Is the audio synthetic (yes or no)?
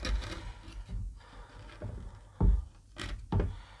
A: no